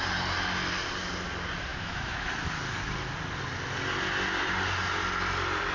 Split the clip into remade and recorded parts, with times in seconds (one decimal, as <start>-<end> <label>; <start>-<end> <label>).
0.0-1.7 recorded; 1.7-2.3 remade; 2.3-5.7 recorded